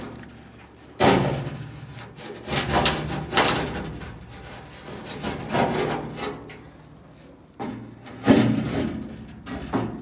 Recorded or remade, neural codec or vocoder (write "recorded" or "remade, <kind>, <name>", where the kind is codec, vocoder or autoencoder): recorded